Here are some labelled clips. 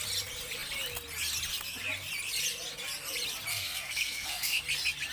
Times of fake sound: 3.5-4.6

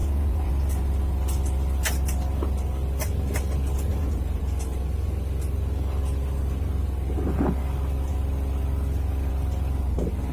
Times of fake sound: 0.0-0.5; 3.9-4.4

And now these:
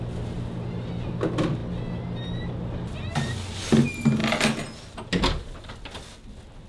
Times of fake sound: none